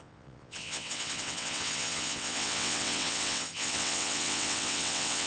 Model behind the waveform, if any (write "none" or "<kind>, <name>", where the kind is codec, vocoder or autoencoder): vocoder, WaveNeXt